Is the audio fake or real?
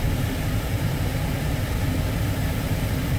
fake